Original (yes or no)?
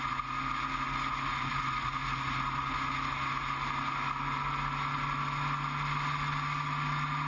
yes